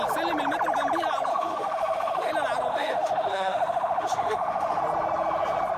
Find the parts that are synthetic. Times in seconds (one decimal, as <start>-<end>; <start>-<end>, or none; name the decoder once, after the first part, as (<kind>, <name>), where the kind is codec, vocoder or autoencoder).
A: 1.3-2.3 (autoencoder, DAC-VAE); 2.7-4.8